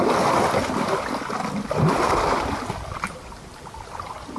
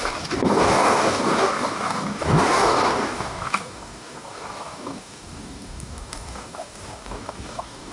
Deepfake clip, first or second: second